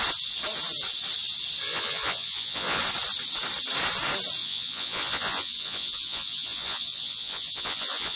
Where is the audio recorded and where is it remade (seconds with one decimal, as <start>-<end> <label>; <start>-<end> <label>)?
0.0-1.6 recorded; 1.6-2.8 remade; 2.8-4.4 recorded; 4.4-8.2 remade